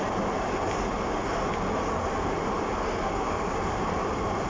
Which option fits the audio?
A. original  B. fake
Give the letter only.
A